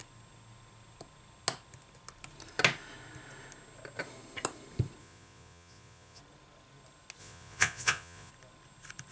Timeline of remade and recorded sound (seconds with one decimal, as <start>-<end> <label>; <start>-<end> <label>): 0.0-5.0 recorded; 5.0-6.2 remade; 6.2-7.2 recorded; 7.2-8.3 remade; 8.3-9.1 recorded